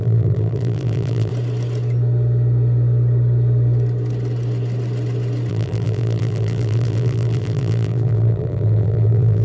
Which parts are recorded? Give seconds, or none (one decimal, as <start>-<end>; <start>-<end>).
1.3-5.5